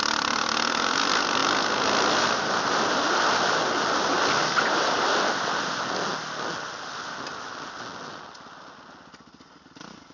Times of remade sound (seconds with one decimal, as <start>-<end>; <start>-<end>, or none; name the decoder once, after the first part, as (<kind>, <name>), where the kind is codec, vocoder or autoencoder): none